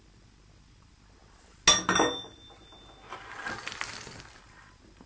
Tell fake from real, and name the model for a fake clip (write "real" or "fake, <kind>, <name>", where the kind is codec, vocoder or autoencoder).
real